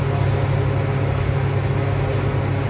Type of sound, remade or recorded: recorded